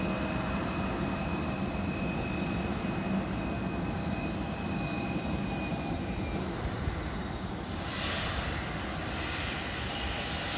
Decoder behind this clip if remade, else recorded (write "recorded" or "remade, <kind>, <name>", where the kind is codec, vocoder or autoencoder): recorded